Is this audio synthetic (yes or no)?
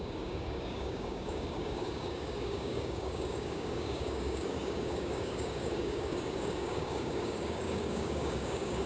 yes